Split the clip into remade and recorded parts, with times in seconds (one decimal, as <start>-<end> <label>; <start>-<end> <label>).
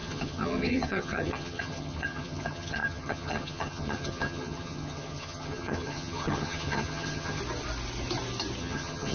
0.0-7.4 remade; 7.4-8.6 recorded; 8.6-9.1 remade